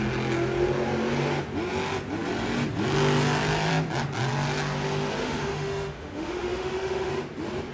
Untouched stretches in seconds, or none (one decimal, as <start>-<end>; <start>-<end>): 0.0-5.2; 7.1-7.7

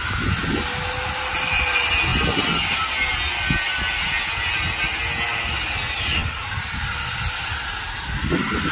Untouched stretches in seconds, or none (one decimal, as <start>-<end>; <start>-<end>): 0.0-8.7

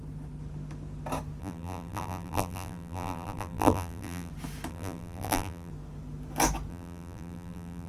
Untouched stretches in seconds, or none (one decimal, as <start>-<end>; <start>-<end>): 0.0-1.4; 4.3-4.7; 5.7-6.7

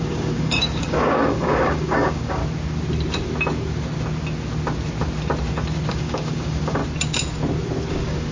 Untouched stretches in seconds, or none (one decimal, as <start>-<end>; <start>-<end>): 2.4-5.9; 6.8-7.9

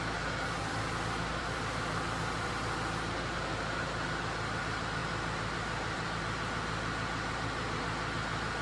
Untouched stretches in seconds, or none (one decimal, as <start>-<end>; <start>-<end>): 0.0-0.6; 2.5-5.0; 6.2-8.6

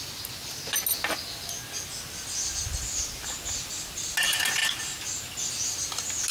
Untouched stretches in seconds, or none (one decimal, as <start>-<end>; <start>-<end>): 0.0-6.3

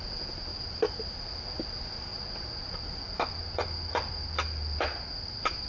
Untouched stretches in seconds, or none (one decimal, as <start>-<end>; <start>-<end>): 0.0-5.7

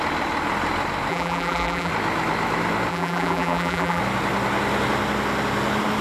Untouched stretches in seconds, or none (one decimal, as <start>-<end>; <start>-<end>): 0.0-1.1; 1.9-2.9; 4.0-6.0